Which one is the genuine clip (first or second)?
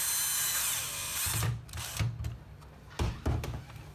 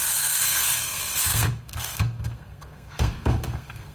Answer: first